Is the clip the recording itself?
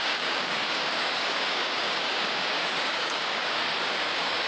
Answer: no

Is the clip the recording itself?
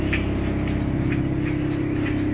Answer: yes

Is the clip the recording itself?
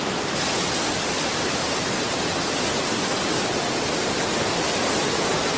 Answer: yes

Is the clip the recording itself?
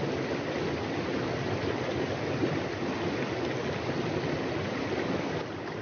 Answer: yes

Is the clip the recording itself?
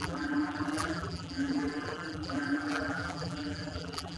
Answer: no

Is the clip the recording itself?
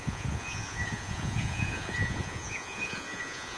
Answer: no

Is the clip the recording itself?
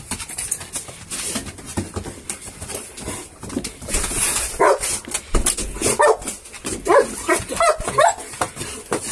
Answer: yes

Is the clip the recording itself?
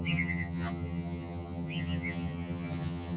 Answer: no